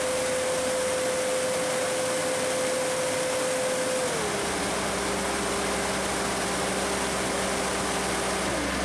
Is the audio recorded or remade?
recorded